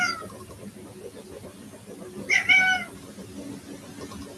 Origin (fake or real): real